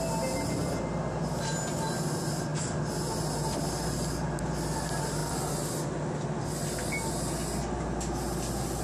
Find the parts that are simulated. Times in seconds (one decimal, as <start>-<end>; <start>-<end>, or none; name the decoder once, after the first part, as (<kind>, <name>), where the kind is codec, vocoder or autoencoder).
none